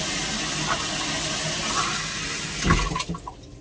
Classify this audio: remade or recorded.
recorded